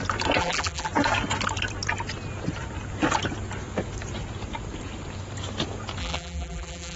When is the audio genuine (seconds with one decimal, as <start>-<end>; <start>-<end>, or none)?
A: 0.0-0.4; 0.9-6.0